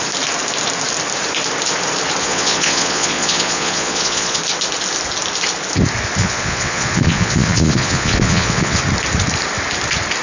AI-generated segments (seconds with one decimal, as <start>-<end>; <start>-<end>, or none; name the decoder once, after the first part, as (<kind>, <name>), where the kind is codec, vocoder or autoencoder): 2.2-4.4 (vocoder, Vocos); 6.2-8.8